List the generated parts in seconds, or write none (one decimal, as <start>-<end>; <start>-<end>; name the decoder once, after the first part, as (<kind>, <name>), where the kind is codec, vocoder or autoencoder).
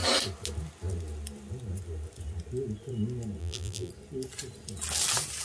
3.4-3.9 (vocoder, BigVGAN v2)